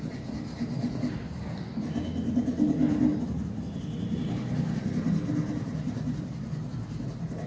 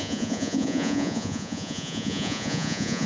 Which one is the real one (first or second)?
first